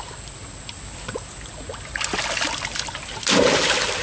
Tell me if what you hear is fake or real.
real